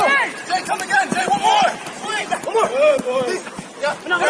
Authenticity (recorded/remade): recorded